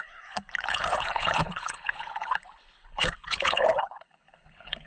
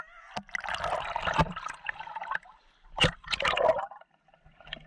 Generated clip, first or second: first